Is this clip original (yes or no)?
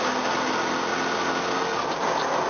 yes